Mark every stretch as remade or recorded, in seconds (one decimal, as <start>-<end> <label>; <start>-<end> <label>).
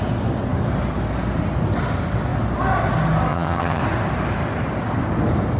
0.0-3.3 recorded; 3.3-3.8 remade; 3.8-5.6 recorded